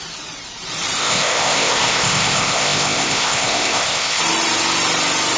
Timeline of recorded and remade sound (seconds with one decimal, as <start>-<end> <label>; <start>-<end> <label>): 0.0-1.0 recorded; 1.0-4.2 remade; 4.2-5.4 recorded